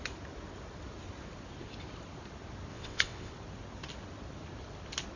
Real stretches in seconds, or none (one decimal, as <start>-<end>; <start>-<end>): 0.0-2.7; 3.3-5.2